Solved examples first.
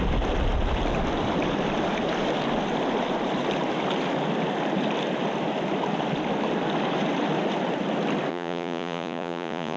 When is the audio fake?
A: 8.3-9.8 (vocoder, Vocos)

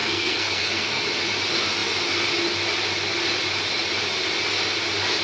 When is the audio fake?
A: 0.0-1.0 (codec, SNAC)